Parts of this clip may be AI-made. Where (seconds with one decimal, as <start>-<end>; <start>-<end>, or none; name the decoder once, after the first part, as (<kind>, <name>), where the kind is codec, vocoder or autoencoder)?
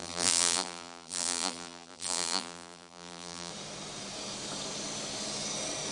0.0-3.5 (vocoder, BigVGAN v2)